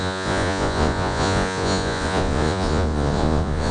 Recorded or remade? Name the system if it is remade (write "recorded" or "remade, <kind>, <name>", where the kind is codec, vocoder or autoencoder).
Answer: remade, vocoder, Vocos